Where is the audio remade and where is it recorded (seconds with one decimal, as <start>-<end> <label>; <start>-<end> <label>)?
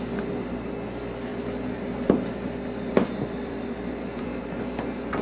0.0-1.3 recorded; 1.3-4.4 remade; 4.4-5.2 recorded